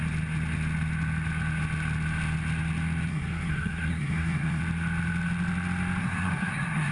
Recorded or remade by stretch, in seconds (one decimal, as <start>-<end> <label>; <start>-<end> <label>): 0.0-3.1 recorded; 3.1-4.6 remade; 4.6-6.0 recorded; 6.0-6.9 remade